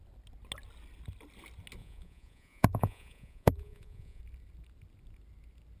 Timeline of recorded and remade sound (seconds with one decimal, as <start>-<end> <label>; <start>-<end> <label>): 0.0-1.8 recorded; 1.8-4.2 remade; 4.2-5.8 recorded